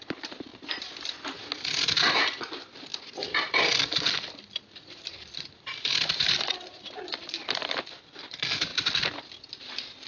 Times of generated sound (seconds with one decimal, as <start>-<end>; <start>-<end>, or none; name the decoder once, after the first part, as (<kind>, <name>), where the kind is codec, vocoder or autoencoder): 0.0-0.5 (vocoder, BigVGAN v2); 2.1-8.7; 9.3-10.1